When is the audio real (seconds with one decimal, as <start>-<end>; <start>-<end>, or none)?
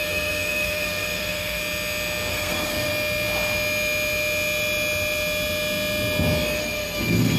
1.6-2.3; 2.9-6.6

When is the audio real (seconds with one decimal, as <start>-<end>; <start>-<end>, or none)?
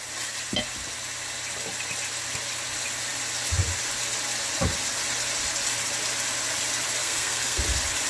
0.0-7.0; 7.6-8.1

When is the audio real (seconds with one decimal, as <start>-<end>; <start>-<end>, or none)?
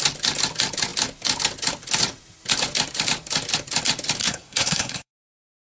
0.0-4.2; 5.1-5.7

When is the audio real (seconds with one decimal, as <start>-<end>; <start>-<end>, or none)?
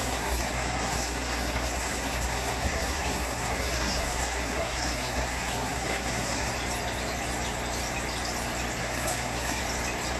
6.5-8.8; 9.6-10.2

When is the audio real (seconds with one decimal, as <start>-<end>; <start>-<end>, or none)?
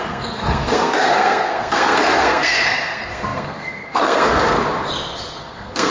4.6-5.4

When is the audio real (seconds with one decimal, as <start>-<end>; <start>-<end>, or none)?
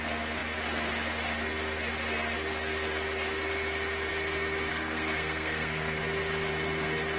0.0-4.7; 6.0-7.2